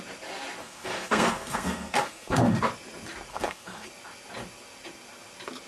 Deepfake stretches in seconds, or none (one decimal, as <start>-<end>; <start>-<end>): 0.6-2.6; 3.3-3.9